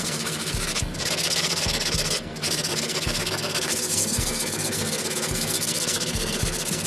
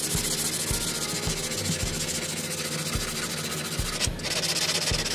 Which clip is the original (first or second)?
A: second